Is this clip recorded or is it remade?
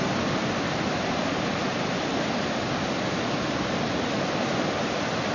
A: recorded